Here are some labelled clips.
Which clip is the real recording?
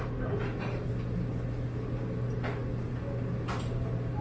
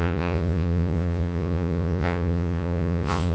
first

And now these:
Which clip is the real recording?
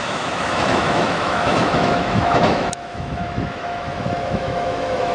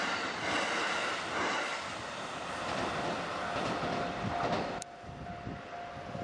second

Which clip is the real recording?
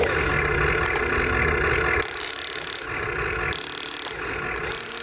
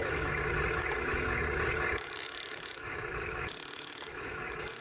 first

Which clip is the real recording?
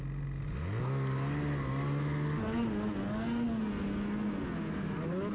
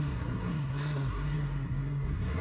first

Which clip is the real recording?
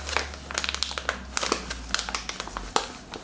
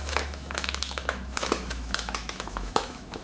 first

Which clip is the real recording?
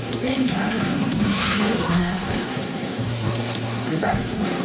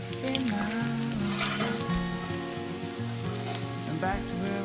second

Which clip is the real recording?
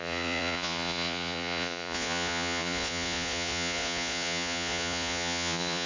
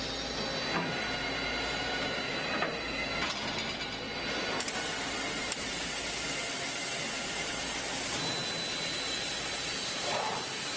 second